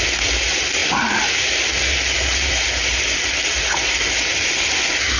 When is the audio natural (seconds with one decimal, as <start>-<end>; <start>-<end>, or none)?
0.0-5.2

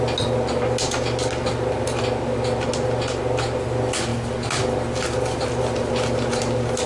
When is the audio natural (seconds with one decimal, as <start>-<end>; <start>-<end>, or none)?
0.0-6.9

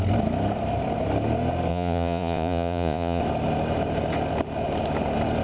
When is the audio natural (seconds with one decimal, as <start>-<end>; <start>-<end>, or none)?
0.0-1.7; 3.2-5.4

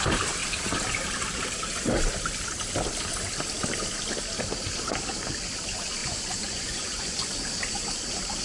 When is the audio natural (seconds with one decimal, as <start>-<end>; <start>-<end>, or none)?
0.0-6.0; 7.3-8.4

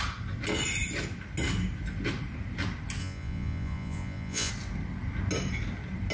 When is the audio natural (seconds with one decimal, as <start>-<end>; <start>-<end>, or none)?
0.0-3.0; 4.5-6.1

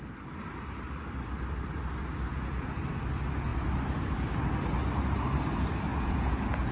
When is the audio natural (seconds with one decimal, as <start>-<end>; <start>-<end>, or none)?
0.0-2.3; 2.8-5.9

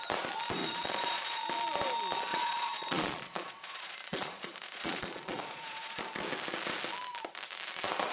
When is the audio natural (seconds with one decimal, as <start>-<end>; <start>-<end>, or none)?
0.0-0.6; 1.4-2.3; 6.0-8.1